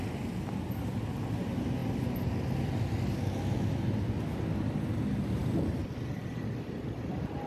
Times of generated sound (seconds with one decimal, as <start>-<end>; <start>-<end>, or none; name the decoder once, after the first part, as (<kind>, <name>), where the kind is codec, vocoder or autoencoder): none